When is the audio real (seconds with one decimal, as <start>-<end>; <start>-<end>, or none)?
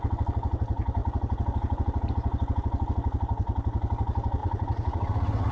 0.0-4.4